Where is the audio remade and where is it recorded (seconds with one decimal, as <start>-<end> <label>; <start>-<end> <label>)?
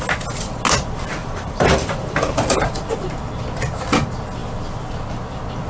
0.0-1.2 recorded; 1.2-2.7 remade; 2.7-5.7 recorded